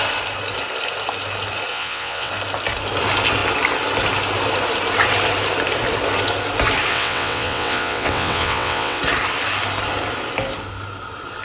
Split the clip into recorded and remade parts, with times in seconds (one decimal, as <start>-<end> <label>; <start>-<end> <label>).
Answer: 0.0-1.7 recorded; 1.7-2.3 remade; 2.3-6.9 recorded; 6.9-9.0 remade; 9.0-11.4 recorded